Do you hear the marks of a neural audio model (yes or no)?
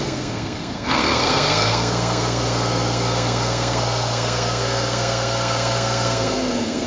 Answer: yes